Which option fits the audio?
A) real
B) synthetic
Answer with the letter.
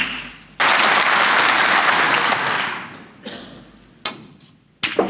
A